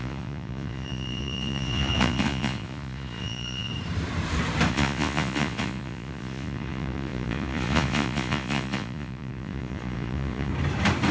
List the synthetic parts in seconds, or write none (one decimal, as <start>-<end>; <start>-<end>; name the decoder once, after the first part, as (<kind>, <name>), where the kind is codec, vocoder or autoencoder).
0.0-3.7 (vocoder, Vocos); 4.7-10.5